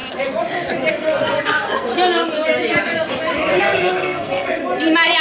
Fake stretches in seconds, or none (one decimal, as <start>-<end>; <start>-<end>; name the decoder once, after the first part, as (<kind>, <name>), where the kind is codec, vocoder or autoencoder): 0.9-1.9 (codec, SNAC); 3.6-4.6